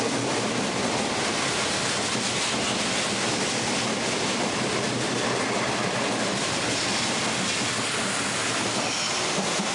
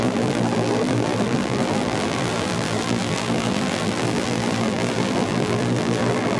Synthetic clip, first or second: second